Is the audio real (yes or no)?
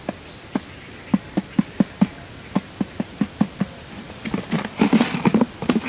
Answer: yes